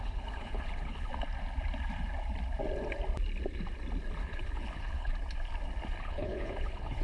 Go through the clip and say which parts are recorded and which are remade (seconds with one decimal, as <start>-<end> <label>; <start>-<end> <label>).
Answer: 0.0-1.1 remade; 1.1-4.2 recorded; 4.2-5.1 remade; 5.1-6.0 recorded; 6.0-7.0 remade

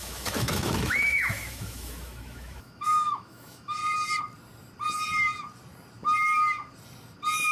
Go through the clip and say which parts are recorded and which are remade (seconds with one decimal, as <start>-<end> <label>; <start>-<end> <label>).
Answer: 0.0-3.8 remade; 3.8-7.5 recorded

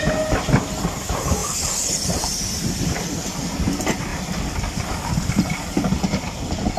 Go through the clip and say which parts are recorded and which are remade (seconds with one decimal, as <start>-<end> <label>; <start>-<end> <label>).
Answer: 0.0-1.4 recorded; 1.4-3.3 remade; 3.3-6.8 recorded

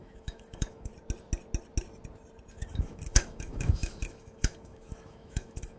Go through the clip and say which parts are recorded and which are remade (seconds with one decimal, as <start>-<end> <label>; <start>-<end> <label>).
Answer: 0.0-0.9 remade; 0.9-2.5 recorded; 2.5-5.8 remade

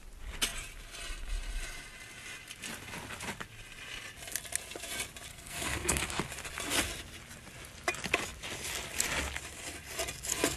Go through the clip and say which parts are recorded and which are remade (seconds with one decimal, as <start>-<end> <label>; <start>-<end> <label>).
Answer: 0.0-5.3 recorded; 5.3-6.2 remade; 6.2-10.6 recorded